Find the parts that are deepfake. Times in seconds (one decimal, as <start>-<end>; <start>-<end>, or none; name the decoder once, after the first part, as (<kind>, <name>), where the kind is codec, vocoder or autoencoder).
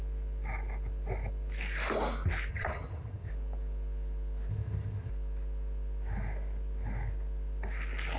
2.5-3.3 (vocoder, HiFi-GAN); 4.5-5.1